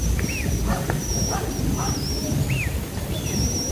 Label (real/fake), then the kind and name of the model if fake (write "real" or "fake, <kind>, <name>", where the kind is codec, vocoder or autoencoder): real